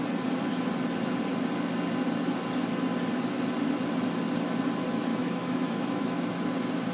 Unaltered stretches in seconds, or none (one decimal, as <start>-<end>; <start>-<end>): 0.0-5.2; 6.3-6.9